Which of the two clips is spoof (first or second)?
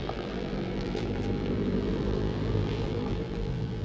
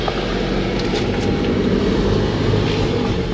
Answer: first